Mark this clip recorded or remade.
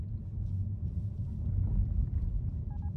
recorded